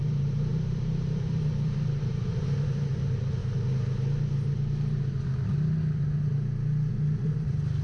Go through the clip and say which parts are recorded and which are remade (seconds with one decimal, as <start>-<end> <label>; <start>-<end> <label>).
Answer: 0.0-3.4 remade; 3.4-6.9 recorded; 6.9-7.8 remade